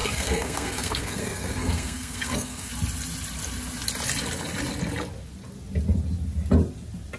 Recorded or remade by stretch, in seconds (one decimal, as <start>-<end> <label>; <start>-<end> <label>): 0.0-2.7 remade; 2.7-7.2 recorded

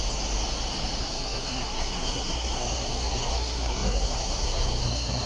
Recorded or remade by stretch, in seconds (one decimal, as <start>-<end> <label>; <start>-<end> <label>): 0.0-1.0 recorded; 1.0-5.3 remade

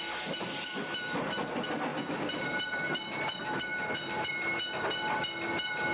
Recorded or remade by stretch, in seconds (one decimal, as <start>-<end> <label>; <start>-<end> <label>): 0.0-5.9 recorded